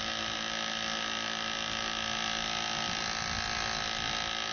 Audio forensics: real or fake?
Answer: real